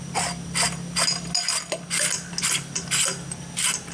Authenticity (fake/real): real